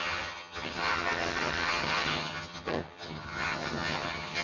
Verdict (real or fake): fake